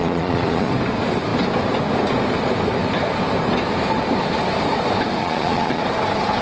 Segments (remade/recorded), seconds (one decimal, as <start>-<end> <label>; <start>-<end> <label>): 0.0-0.7 remade; 0.7-5.2 recorded; 5.2-5.8 remade; 5.8-6.4 recorded